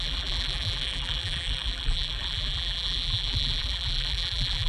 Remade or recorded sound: remade